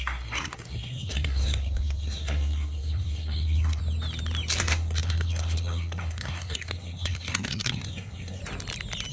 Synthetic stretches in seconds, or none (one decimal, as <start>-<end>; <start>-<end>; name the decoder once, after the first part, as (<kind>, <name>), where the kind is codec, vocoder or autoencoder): 0.0-3.8 (codec, SNAC); 4.6-8.4